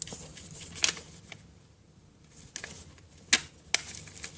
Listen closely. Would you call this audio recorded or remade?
recorded